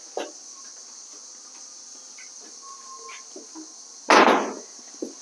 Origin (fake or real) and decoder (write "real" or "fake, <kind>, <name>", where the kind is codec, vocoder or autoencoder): real